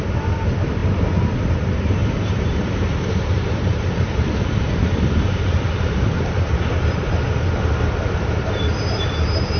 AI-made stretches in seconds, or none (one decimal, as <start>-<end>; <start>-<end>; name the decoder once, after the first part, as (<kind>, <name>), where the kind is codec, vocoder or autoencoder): 2.0-6.8 (vocoder, BigVGAN v2)